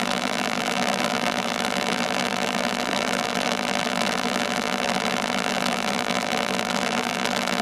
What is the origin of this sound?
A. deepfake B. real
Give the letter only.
A